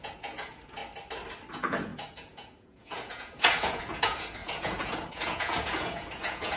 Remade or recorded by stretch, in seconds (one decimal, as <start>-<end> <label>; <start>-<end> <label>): 0.0-0.8 remade; 0.8-1.5 recorded; 1.5-6.6 remade